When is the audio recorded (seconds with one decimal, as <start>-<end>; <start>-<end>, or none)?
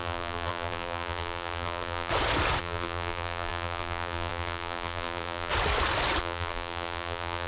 2.1-2.6; 5.5-6.2